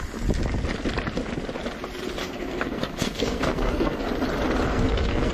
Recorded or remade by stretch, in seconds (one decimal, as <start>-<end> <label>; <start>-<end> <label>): 0.0-2.2 recorded; 2.2-4.1 remade; 4.1-4.7 recorded; 4.7-5.3 remade